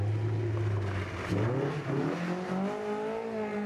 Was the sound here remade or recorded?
recorded